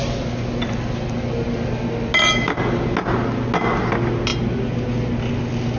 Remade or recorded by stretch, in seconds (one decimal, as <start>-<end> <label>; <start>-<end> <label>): 0.0-5.8 recorded